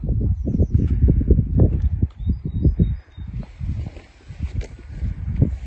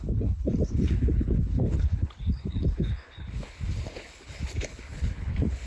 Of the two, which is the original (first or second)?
first